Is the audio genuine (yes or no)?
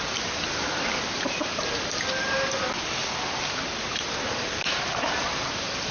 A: yes